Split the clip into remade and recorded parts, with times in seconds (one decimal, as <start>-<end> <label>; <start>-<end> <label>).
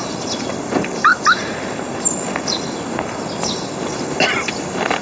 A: 0.0-5.0 recorded